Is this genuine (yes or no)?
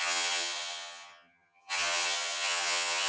no